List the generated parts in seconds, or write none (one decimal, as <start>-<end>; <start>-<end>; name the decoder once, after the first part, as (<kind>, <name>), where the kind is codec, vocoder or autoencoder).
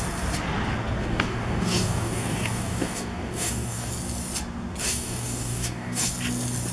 1.0-3.9 (codec, DAC); 4.8-6.1